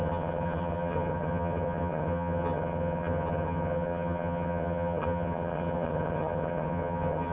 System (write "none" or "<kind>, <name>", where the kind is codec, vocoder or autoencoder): vocoder, HiFi-GAN